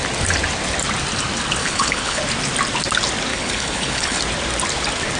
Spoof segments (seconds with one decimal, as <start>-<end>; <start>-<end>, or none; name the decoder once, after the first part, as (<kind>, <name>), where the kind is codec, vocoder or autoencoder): 1.6-2.2 (codec, HILCodec); 3.3-4.2